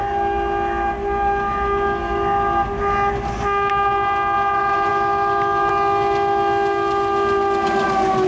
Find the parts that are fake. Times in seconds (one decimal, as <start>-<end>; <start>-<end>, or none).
none